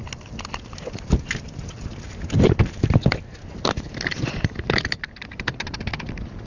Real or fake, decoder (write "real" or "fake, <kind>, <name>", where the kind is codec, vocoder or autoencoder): real